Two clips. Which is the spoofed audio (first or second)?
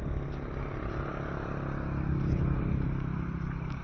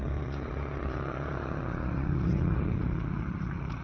second